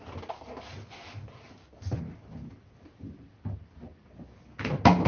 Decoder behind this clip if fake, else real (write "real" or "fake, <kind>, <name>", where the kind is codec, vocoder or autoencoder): real